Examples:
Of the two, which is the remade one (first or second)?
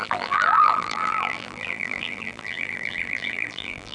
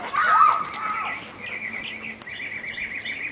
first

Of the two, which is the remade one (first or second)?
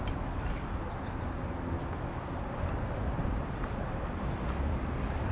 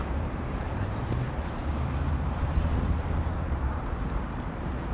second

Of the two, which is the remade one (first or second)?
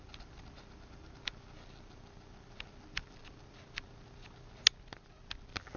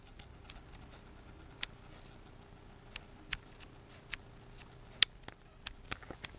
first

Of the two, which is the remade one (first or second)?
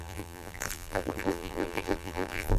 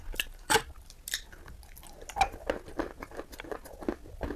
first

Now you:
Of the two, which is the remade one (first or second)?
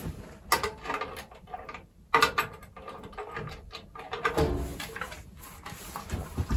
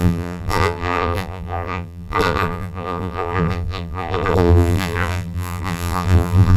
second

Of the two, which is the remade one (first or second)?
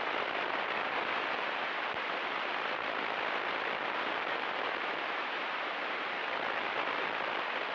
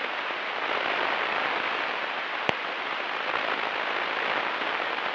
first